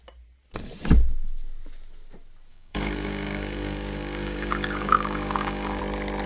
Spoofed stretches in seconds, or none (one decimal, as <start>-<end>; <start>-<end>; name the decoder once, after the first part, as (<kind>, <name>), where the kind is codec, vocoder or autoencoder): 2.5-5.8 (codec, DAC)